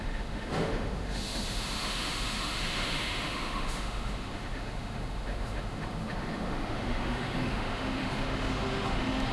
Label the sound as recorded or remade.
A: remade